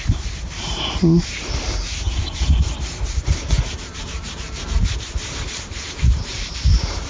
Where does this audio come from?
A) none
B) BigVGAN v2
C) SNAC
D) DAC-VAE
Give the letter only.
B